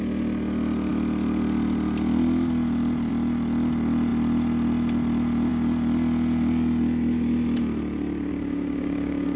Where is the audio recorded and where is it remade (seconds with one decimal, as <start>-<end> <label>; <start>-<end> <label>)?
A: 0.0-8.3 recorded; 8.3-9.4 remade